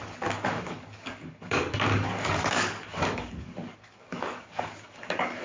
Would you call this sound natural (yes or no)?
no